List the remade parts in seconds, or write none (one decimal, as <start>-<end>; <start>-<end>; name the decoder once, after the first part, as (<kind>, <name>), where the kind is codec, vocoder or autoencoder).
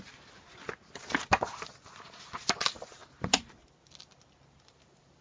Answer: none